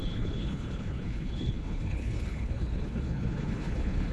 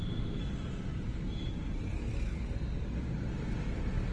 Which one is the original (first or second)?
second